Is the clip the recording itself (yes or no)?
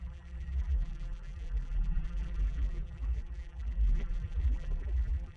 no